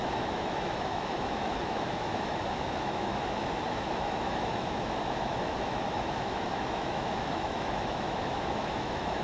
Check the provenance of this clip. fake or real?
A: fake